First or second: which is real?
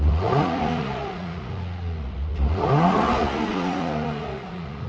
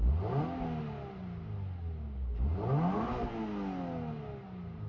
second